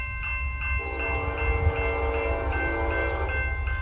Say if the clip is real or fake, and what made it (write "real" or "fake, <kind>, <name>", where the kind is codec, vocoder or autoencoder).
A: real